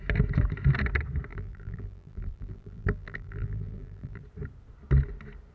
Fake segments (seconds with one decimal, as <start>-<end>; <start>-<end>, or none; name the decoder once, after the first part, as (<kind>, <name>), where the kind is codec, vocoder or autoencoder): 1.3-4.2 (vocoder, BigVGAN v2)